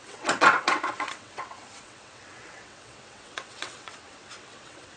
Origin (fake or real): fake